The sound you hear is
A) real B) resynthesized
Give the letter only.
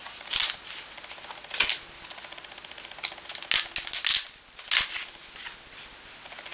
A